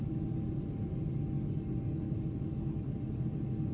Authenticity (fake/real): real